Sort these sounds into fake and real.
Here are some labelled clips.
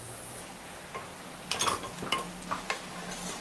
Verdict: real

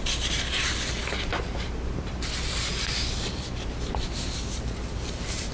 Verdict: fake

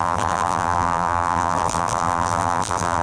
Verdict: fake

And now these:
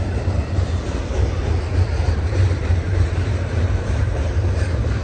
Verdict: fake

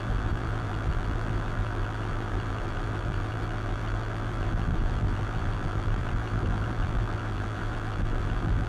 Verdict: fake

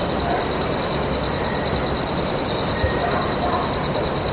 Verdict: real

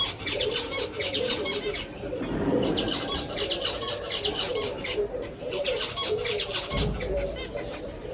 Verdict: fake